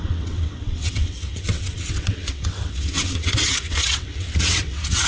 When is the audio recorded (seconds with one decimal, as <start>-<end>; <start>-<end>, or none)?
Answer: none